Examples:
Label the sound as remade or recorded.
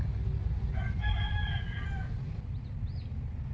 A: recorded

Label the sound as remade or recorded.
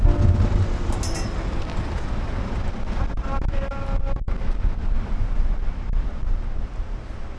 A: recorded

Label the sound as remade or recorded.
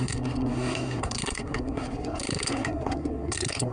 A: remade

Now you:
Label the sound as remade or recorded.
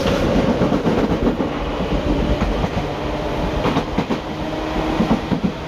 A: recorded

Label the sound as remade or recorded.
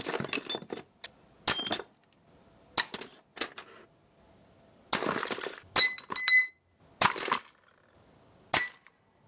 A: recorded